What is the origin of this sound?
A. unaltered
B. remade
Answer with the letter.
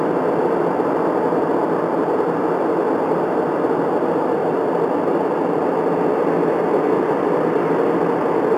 A